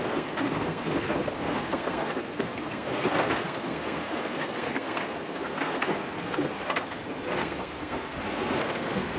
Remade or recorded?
remade